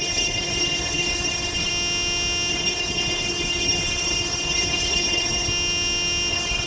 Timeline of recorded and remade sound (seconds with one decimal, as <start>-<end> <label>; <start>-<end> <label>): 0.0-1.7 remade; 1.7-2.5 recorded; 2.5-5.5 remade; 5.5-6.3 recorded; 6.3-6.7 remade